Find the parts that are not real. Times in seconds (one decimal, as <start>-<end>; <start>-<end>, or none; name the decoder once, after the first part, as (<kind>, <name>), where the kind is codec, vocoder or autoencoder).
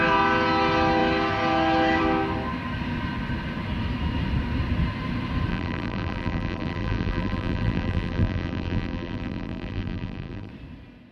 5.5-10.5 (vocoder, BigVGAN v2)